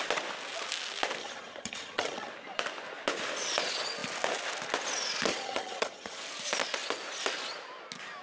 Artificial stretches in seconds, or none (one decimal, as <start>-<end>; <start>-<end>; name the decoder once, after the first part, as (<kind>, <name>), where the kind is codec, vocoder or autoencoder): 1.2-2.3 (vocoder, HiFi-GAN); 5.3-6.2